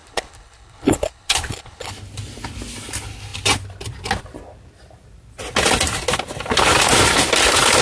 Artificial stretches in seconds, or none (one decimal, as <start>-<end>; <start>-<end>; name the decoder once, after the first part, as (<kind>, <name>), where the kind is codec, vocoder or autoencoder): 0.0-1.9 (codec, HILCodec)